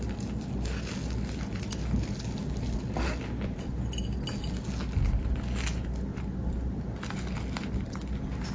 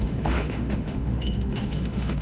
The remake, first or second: second